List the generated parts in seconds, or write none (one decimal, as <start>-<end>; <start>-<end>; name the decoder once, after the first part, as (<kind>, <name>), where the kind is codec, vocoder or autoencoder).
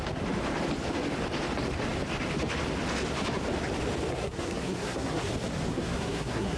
4.1-5.3 (codec, SNAC); 5.7-6.6